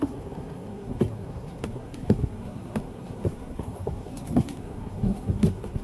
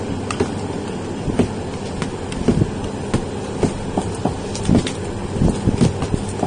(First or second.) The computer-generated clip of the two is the first